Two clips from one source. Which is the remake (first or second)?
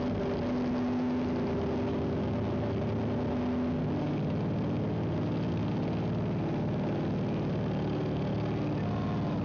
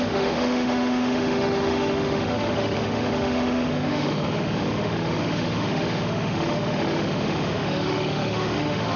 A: second